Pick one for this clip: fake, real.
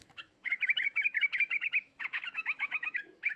fake